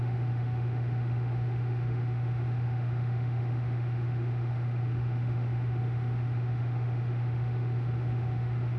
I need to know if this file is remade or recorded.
remade